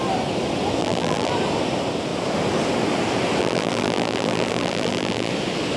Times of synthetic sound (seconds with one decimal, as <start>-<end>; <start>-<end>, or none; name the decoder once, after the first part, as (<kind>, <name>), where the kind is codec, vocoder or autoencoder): 0.8-1.3 (vocoder, BigVGAN v2); 3.4-5.3